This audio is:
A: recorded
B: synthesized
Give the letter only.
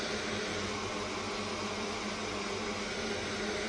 A